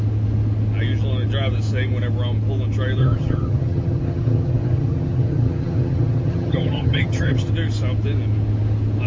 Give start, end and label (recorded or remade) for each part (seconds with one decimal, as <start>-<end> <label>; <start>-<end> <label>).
0.0-3.0 recorded; 3.0-7.5 remade; 7.5-9.1 recorded